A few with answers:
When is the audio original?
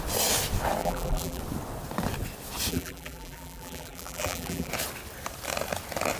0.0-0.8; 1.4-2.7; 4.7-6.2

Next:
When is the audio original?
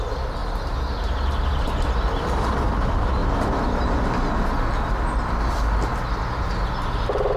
0.0-7.4